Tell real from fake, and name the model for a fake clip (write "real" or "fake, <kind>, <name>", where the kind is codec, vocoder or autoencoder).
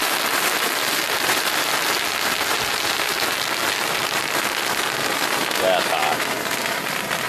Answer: real